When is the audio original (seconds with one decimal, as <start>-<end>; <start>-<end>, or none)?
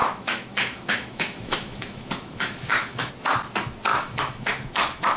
3.1-3.9